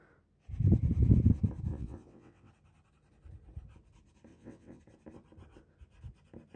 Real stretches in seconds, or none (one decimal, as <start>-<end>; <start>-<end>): 0.0-1.7; 2.5-4.3; 4.8-6.6